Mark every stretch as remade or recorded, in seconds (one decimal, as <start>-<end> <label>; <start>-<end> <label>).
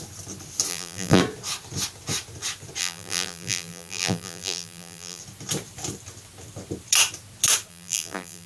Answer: 0.0-0.7 recorded; 0.7-1.2 remade; 1.2-2.8 recorded; 2.8-5.2 remade; 5.2-7.7 recorded; 7.7-8.5 remade